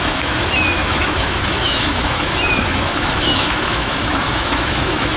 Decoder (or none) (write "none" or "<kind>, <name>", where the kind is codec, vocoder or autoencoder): autoencoder, DAC-VAE